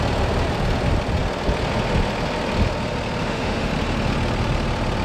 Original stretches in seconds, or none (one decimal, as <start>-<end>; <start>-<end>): 0.0-3.2; 3.7-5.0